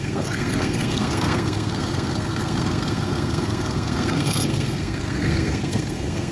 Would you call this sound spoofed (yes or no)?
yes